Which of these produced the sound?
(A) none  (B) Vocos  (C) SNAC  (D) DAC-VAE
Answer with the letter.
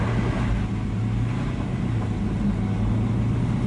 A